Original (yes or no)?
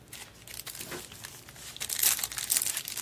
yes